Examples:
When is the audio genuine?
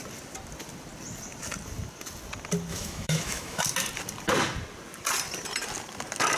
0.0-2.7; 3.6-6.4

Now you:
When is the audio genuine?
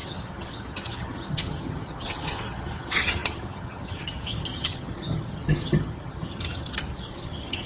none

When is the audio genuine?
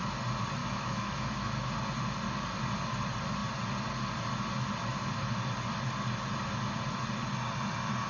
0.0-0.6; 1.7-8.1